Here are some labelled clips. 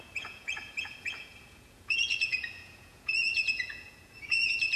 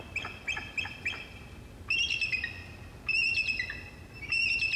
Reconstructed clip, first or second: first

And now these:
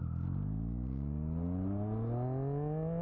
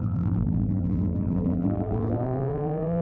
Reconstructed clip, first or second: second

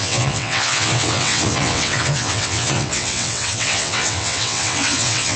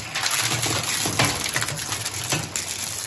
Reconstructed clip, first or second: first